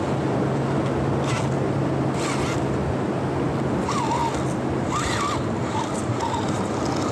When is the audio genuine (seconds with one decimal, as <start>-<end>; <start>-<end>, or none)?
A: 0.0-7.1